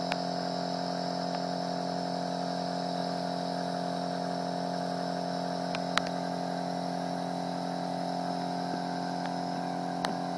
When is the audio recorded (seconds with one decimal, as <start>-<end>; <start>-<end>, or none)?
0.0-10.4